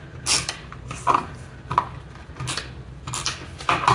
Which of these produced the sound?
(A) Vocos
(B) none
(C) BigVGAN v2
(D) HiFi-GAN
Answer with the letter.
B